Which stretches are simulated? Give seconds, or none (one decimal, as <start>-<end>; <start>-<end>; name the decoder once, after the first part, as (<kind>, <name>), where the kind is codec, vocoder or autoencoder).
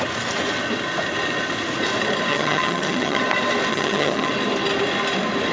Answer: 2.3-3.2 (vocoder, HiFi-GAN); 3.7-4.3